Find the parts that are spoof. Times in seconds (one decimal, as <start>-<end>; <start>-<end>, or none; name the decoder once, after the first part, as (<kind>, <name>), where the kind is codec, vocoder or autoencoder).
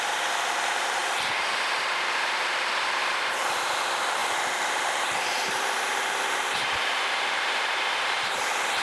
0.0-8.8 (vocoder, BigVGAN v2)